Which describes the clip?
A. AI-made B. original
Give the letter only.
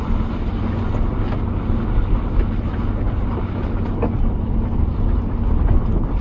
B